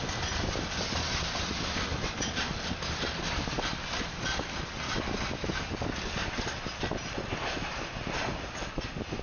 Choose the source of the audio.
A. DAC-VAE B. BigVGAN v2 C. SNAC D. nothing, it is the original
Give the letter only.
D